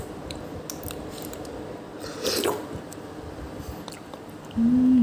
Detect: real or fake real